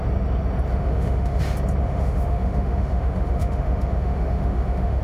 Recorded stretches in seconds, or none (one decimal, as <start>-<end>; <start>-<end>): 0.0-0.7; 1.4-1.8